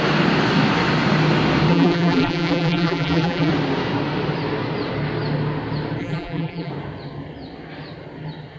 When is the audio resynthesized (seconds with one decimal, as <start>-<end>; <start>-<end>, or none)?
1.7-3.5; 6.0-6.7